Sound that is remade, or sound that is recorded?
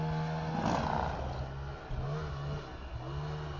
recorded